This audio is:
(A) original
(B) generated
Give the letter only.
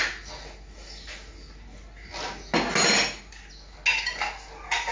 A